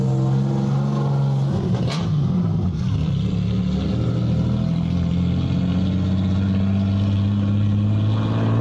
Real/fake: real